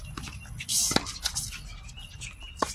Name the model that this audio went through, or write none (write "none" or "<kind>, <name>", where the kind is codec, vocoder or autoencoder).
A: none